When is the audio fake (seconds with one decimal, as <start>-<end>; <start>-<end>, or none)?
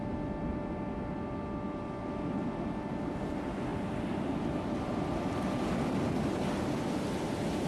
none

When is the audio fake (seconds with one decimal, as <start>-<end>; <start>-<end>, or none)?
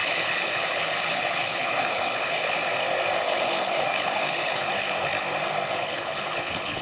0.0-2.6; 3.2-5.1; 5.7-6.8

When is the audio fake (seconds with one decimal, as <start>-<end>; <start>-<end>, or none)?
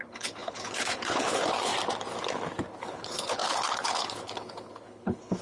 0.0-1.7; 2.8-5.4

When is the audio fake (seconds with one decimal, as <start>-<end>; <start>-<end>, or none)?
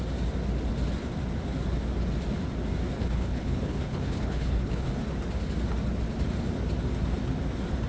3.0-4.9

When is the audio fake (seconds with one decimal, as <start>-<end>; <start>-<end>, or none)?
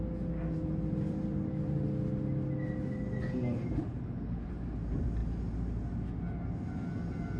3.8-4.5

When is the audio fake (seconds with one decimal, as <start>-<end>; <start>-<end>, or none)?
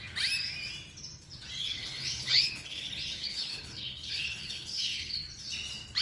1.6-5.2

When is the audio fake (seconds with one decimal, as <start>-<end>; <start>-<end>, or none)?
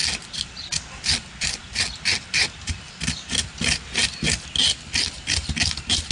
none